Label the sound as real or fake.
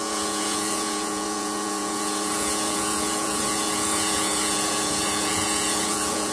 fake